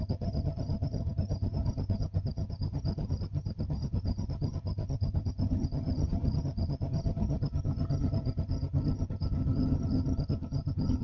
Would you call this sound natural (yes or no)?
no